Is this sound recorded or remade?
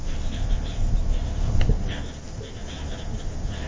recorded